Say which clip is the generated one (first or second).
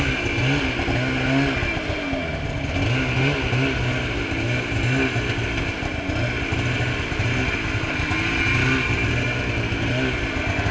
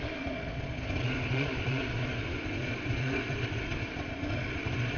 second